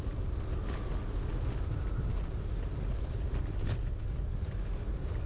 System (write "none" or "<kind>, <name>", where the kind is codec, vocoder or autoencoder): none